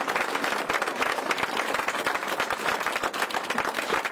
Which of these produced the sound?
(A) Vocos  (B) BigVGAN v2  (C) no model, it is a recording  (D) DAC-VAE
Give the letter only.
C